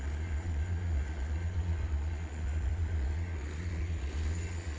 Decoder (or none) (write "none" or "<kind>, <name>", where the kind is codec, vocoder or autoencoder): vocoder, Vocos